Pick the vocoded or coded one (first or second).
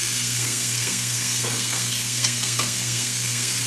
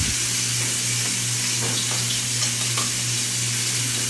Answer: first